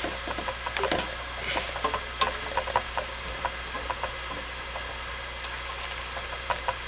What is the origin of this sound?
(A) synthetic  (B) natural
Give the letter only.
B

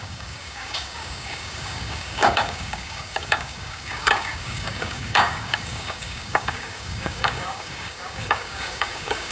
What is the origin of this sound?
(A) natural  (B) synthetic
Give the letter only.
B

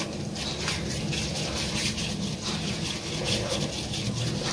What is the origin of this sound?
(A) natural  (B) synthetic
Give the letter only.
A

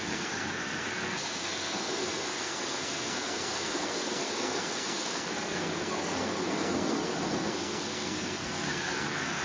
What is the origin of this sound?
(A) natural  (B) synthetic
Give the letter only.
B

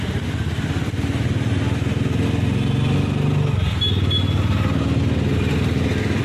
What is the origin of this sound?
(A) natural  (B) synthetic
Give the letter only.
A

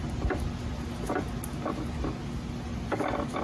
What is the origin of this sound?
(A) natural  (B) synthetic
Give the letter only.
A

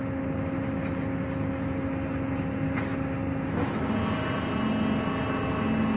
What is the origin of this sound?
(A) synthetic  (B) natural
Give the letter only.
B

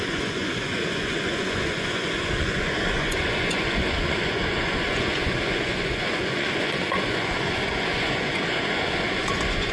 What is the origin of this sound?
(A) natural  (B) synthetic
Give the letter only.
B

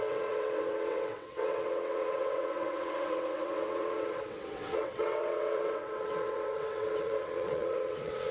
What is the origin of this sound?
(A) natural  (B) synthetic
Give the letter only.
B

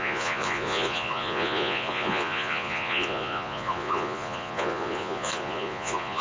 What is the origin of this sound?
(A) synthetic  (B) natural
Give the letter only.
A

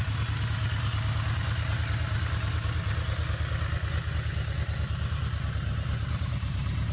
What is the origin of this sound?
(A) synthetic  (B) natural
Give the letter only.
B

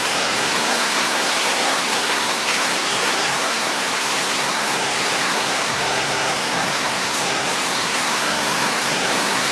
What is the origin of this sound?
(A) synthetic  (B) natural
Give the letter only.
A